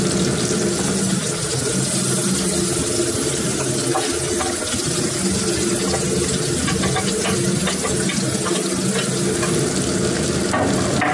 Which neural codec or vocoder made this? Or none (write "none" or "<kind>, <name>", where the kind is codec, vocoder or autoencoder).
none